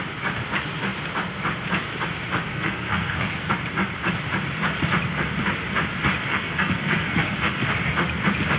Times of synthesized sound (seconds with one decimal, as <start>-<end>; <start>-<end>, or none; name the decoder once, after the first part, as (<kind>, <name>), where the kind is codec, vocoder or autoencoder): 2.5-3.5 (codec, SNAC); 6.3-7.7